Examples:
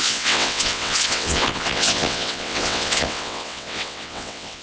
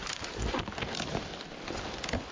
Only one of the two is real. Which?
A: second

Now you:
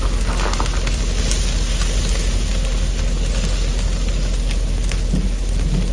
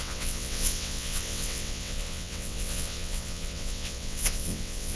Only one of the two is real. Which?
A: first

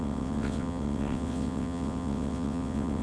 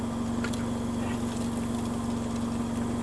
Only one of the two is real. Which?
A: second